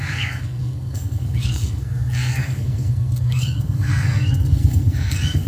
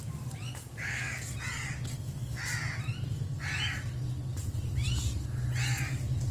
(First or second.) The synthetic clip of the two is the first